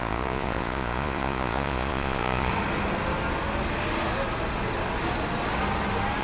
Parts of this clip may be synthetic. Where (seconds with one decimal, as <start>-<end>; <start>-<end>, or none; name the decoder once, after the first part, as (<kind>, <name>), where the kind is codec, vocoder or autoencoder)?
0.0-2.5 (vocoder, Vocos)